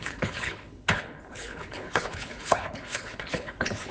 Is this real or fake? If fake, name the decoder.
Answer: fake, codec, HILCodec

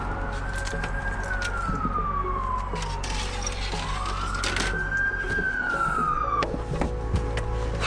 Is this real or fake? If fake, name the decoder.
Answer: real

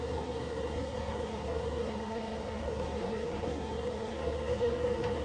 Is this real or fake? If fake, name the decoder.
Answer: fake, codec, SNAC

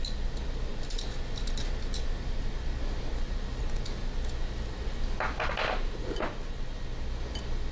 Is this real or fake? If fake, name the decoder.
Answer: real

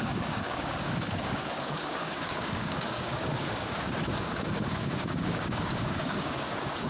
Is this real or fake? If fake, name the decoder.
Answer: fake, codec, DAC